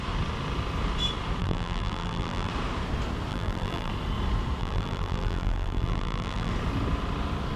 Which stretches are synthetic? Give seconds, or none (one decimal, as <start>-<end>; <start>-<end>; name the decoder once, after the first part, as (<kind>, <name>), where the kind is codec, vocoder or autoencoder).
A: 1.4-2.5 (vocoder, BigVGAN v2); 3.3-3.9; 4.6-6.5